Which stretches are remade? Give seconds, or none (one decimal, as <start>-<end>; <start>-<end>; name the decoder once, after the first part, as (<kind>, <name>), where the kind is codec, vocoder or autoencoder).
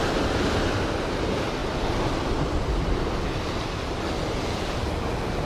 none